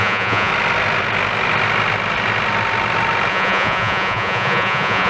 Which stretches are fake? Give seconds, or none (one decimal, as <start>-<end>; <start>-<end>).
0.0-0.5; 3.3-5.1